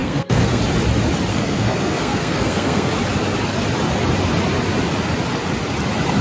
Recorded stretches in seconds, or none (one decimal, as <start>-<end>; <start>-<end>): 0.6-1.3; 2.9-6.2